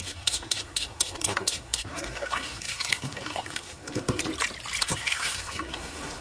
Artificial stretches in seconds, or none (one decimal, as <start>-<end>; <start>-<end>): 0.0-4.2; 4.8-6.2